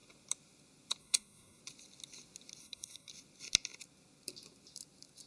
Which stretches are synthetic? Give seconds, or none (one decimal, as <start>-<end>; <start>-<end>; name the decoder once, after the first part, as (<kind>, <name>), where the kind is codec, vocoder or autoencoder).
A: 1.0-1.6 (codec, SNAC); 2.6-3.1